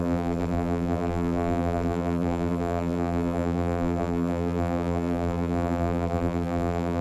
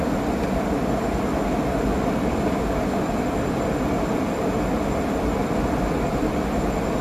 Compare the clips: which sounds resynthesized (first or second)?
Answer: first